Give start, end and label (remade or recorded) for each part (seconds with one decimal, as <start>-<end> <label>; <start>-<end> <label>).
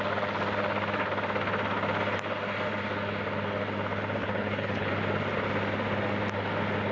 0.0-4.2 recorded; 4.2-4.9 remade; 4.9-6.9 recorded